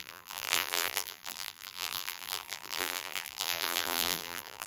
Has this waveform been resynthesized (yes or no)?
yes